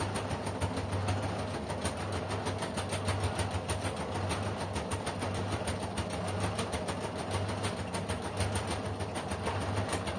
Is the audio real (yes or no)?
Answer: yes